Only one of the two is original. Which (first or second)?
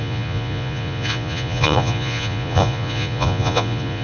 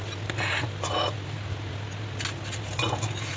second